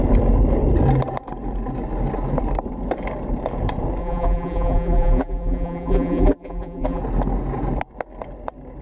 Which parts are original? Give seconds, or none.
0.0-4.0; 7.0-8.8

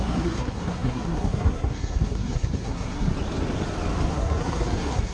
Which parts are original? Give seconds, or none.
3.1-4.1

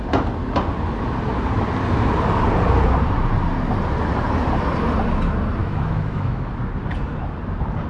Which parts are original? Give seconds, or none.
0.0-5.6; 6.5-7.9

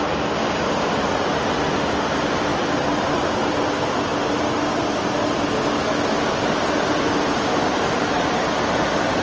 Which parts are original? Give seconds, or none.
0.0-2.5; 3.2-7.7; 8.5-9.2

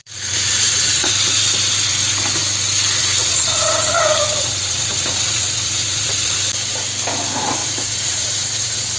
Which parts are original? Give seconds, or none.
1.1-3.0; 6.4-7.6

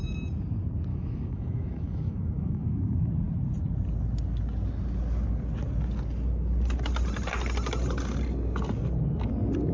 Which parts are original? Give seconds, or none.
0.0-0.9; 3.1-9.7